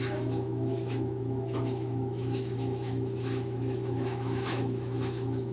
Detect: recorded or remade remade